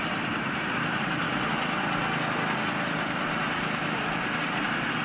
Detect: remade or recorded recorded